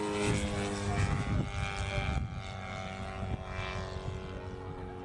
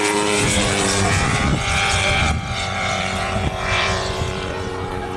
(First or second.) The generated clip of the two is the second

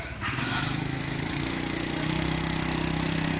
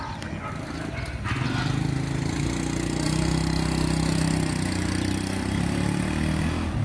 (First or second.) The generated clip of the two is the first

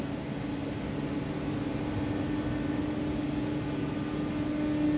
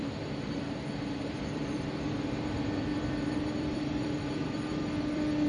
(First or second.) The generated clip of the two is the second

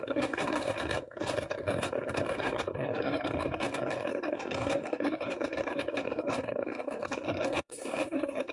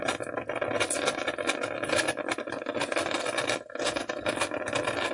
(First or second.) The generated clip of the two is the first